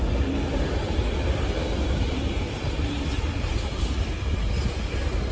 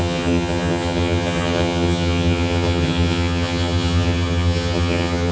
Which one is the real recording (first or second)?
first